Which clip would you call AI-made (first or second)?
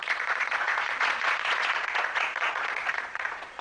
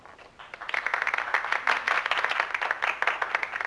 first